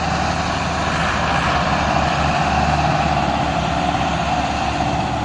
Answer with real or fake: real